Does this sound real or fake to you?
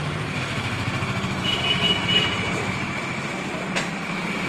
fake